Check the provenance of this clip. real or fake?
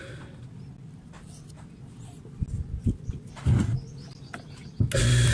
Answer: real